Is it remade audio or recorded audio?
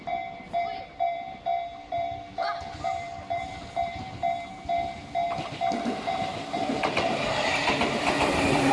remade